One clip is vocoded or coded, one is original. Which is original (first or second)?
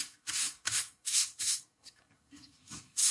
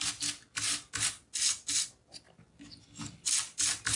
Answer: second